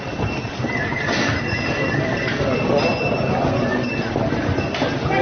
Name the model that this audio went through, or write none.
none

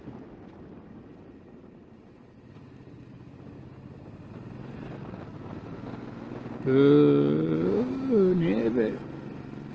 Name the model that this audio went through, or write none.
none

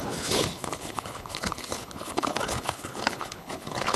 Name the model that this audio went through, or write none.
codec, HILCodec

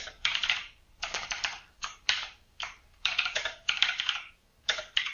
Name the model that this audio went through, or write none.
codec, DAC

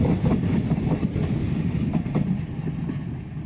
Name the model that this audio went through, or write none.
none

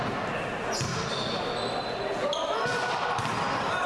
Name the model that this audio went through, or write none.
none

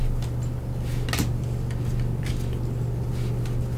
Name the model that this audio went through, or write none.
none